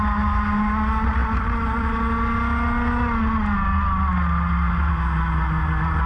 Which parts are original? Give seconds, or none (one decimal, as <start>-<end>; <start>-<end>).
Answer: 0.0-6.1